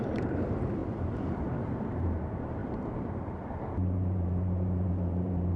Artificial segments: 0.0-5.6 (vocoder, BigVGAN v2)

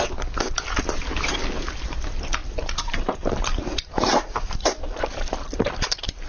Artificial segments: 2.4-6.3 (vocoder, BigVGAN v2)